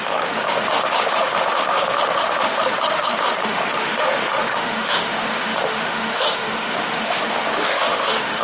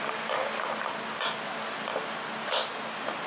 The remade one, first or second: first